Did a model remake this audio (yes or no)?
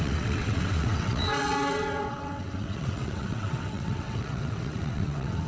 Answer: yes